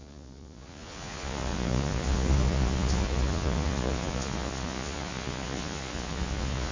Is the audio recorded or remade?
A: remade